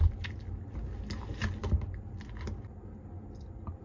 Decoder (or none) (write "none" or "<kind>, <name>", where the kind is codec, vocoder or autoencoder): none